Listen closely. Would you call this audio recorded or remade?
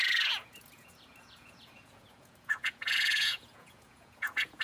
remade